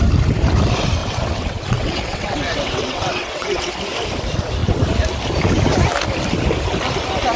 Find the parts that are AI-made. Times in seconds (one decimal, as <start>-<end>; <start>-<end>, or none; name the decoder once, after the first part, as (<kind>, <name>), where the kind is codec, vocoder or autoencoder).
1.0-3.7 (vocoder, WaveNeXt)